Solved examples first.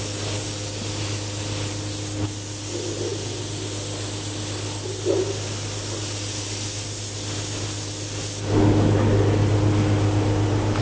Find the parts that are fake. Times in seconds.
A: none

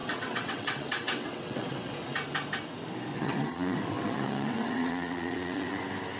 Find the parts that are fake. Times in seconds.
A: 0.0-1.9 (vocoder, WaveNeXt); 3.1-5.8